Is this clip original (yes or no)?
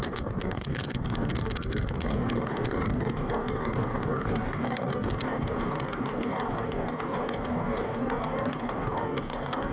no